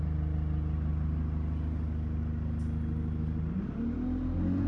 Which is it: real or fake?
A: real